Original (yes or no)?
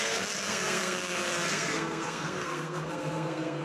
no